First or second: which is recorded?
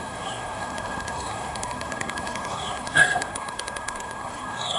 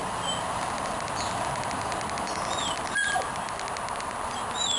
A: second